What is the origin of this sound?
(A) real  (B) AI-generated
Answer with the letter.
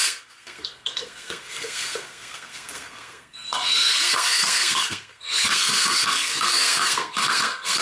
B